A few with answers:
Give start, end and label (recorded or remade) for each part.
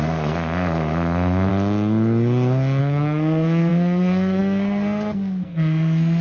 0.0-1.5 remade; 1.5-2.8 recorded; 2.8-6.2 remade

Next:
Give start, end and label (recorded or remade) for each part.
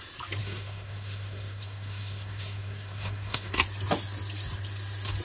0.0-0.4 recorded; 0.4-3.5 remade; 3.5-5.2 recorded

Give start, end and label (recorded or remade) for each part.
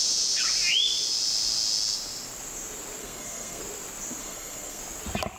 0.0-3.0 recorded; 3.0-3.6 remade; 3.6-4.2 recorded; 4.2-4.8 remade; 4.8-5.4 recorded